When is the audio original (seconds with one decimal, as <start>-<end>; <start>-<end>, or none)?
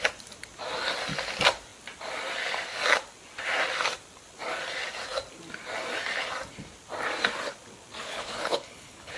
0.0-8.0